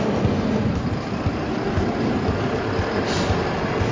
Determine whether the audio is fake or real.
real